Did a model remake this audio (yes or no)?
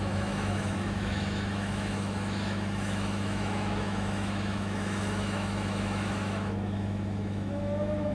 yes